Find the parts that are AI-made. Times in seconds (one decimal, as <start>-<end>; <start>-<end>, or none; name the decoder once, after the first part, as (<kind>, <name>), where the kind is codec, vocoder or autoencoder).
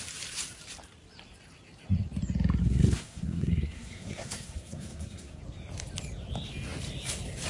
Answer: 2.6-5.4 (codec, SNAC)